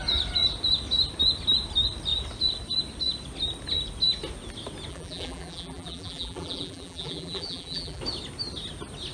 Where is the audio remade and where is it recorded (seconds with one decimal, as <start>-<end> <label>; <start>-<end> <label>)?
0.0-4.9 recorded; 4.9-8.0 remade; 8.0-9.1 recorded